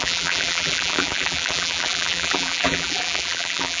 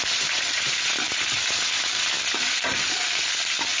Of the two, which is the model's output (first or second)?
first